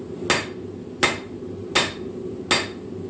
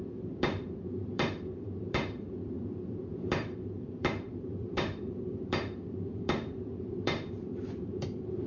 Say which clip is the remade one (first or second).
second